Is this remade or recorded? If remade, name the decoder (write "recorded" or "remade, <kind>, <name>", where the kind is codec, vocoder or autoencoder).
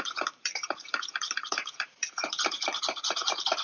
remade, vocoder, BigVGAN v2